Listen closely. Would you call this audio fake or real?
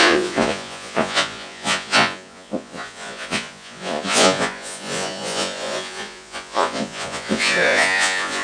fake